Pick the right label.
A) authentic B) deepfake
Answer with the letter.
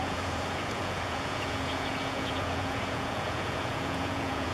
B